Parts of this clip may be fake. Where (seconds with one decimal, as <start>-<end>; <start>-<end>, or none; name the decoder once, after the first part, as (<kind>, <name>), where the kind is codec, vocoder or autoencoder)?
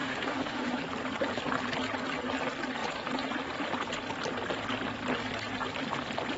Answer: 0.0-0.8 (autoencoder, DAC-VAE)